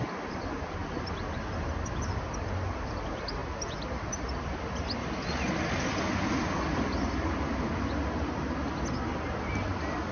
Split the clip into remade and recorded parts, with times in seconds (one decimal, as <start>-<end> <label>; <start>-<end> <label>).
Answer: 0.0-10.1 recorded

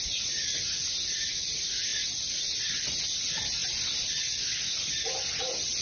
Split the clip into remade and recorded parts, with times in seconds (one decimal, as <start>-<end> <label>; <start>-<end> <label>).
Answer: 0.0-5.8 recorded

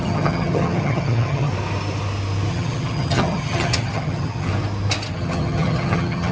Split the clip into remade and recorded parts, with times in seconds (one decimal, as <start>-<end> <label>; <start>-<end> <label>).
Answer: 0.0-1.5 remade; 1.5-2.5 recorded; 2.5-4.5 remade; 4.5-5.1 recorded; 5.1-6.3 remade